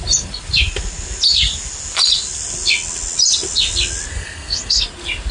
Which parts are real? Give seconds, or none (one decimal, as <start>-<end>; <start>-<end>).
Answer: 0.0-4.1; 4.8-5.3